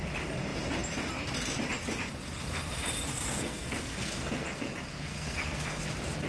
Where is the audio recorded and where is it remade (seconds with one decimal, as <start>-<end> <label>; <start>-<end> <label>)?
0.0-3.1 recorded; 3.1-5.8 remade; 5.8-6.3 recorded

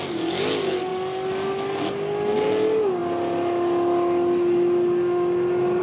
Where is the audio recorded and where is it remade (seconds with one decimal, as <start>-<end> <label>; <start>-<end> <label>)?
0.0-5.8 recorded

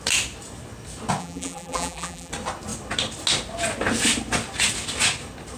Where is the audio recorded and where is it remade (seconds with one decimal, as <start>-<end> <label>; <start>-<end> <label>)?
0.0-1.2 recorded; 1.2-2.3 remade; 2.3-5.6 recorded

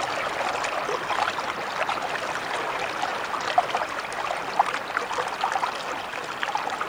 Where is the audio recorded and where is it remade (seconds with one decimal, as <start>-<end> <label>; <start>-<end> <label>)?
0.0-6.9 recorded

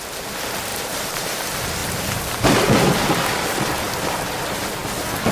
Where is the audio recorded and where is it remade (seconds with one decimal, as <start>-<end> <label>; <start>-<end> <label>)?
0.0-0.7 recorded; 0.7-1.4 remade; 1.4-1.8 recorded; 1.8-3.6 remade; 3.6-5.3 recorded

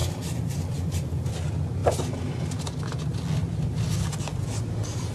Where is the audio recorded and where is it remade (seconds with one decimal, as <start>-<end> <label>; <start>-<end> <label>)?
0.0-1.3 remade; 1.3-5.1 recorded

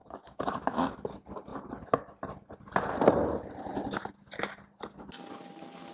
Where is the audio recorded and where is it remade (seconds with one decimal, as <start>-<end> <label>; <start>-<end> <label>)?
0.0-0.9 remade; 0.9-5.9 recorded

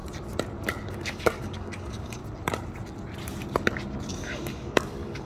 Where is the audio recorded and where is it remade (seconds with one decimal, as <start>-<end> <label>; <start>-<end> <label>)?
0.0-0.9 recorded; 0.9-2.2 remade; 2.2-4.1 recorded; 4.1-5.3 remade